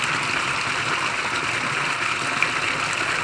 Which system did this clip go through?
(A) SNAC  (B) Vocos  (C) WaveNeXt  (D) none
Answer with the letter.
D